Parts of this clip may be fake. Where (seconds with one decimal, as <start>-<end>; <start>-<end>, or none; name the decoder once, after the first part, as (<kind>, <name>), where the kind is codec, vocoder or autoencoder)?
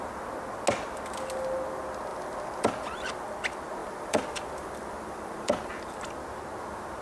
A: 2.1-3.1 (vocoder, BigVGAN v2); 3.8-5.7